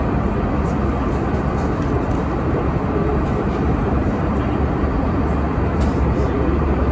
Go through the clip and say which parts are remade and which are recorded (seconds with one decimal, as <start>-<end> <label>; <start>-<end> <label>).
0.0-3.1 recorded; 3.1-6.9 remade